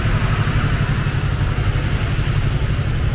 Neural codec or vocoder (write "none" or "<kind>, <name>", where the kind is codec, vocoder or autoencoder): none